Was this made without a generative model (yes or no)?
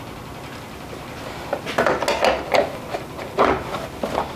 yes